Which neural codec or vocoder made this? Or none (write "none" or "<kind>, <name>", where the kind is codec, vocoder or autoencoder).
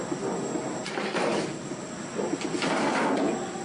none